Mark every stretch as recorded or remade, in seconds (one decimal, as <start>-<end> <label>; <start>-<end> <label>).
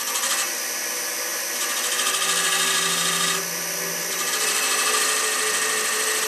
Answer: 0.0-6.3 recorded